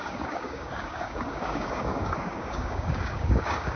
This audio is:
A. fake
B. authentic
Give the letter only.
A